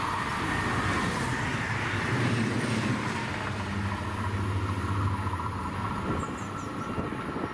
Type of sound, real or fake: real